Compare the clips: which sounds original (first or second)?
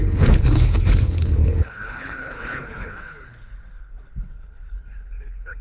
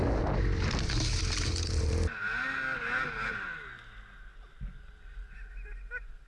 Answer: second